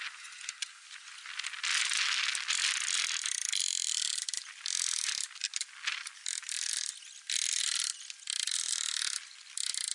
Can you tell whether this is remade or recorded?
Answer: recorded